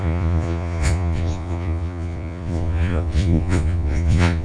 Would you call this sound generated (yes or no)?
yes